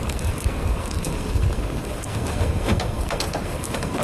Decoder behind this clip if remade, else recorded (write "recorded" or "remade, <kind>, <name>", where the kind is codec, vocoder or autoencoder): remade, codec, SNAC